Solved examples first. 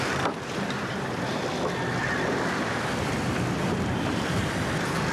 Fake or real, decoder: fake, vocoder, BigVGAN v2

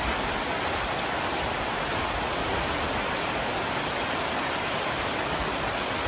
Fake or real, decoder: real